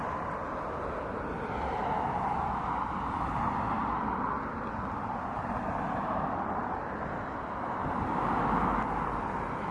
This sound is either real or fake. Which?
real